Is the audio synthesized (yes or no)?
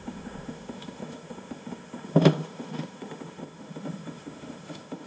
yes